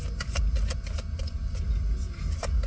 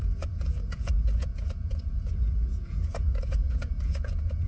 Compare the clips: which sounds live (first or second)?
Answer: first